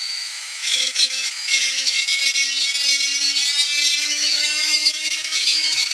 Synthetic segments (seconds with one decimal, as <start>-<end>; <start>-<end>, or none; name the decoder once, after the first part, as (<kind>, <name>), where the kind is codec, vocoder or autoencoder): 0.0-2.2 (autoencoder, DAC-VAE); 4.0-5.9